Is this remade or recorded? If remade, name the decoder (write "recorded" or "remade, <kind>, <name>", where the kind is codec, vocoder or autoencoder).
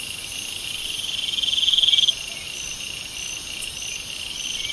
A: recorded